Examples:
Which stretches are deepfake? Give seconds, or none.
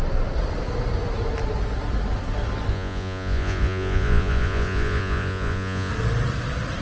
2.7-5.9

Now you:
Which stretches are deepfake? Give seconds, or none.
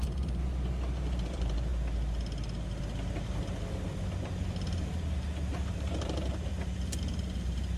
0.0-0.4; 1.0-1.7; 5.7-6.5; 7.0-7.8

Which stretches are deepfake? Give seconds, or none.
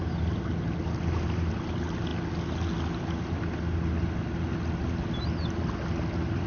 none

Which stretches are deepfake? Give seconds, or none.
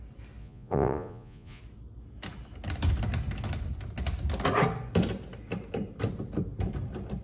0.4-1.6